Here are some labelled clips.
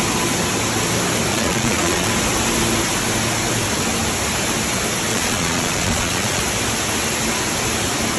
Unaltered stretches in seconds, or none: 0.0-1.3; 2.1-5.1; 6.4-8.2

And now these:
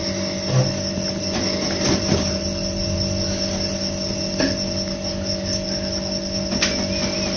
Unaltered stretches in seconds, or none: 4.4-7.4

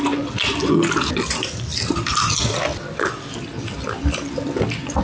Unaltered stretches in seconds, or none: 0.0-5.0

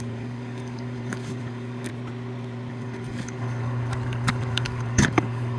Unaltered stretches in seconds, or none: 1.9-2.7